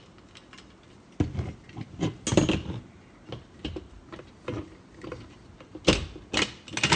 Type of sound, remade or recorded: recorded